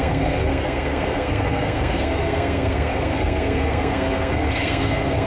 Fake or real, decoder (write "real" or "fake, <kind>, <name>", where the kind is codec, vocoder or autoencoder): fake, codec, SNAC